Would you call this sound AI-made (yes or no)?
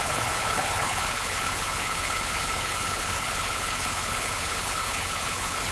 yes